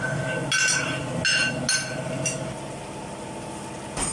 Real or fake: real